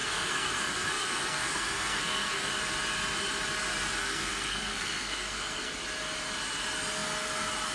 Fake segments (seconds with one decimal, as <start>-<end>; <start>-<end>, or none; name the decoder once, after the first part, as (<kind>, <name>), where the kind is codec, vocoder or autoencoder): 0.0-2.5 (codec, SNAC); 4.0-5.7